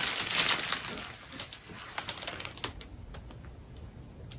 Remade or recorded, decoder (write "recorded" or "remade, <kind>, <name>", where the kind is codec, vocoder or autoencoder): recorded